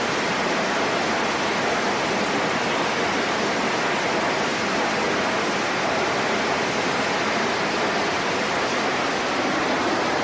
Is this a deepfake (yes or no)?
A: no